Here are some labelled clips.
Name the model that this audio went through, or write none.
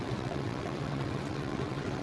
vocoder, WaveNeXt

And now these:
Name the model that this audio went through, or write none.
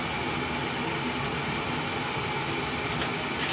none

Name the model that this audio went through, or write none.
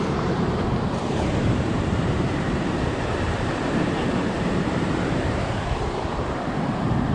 vocoder, BigVGAN v2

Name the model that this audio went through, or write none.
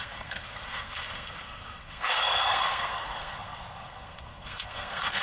codec, SNAC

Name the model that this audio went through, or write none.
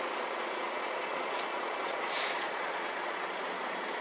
vocoder, Vocos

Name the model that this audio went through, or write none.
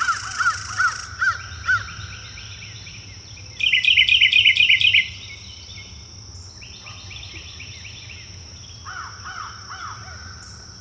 none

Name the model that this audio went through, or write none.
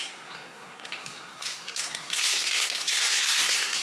codec, SNAC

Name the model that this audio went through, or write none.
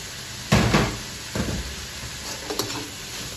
none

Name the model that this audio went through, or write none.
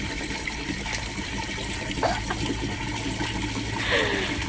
none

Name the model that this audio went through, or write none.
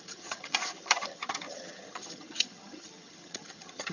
vocoder, HiFi-GAN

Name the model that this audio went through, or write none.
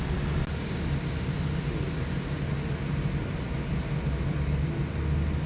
none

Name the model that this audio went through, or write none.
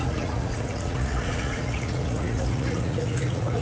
vocoder, Vocos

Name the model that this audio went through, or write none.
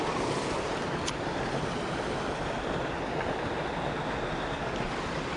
none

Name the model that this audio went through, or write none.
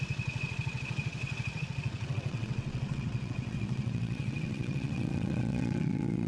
vocoder, WaveNeXt